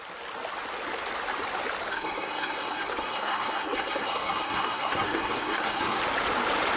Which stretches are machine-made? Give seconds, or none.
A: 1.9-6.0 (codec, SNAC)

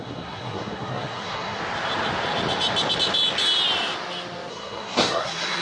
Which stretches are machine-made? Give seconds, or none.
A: 0.0-1.6 (codec, SNAC); 4.5-5.6

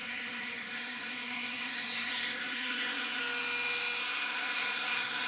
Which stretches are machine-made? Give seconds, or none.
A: 0.0-3.2 (codec, SNAC); 4.0-5.3